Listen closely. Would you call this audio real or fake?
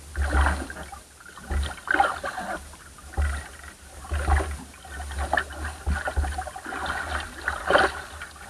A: real